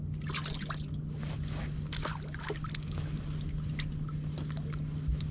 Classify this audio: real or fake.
real